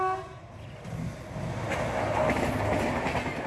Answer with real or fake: real